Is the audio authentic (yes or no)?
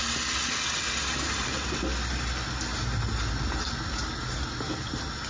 yes